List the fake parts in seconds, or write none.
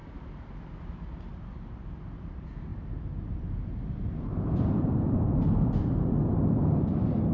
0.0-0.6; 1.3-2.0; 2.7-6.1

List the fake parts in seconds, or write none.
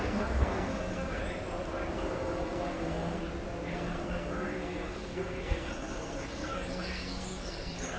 0.0-1.2; 1.9-3.2; 3.7-8.0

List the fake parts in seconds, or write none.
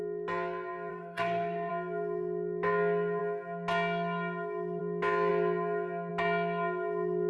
0.9-1.7